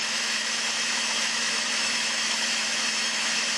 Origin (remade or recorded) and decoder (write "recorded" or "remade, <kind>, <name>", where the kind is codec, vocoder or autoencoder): remade, autoencoder, DAC-VAE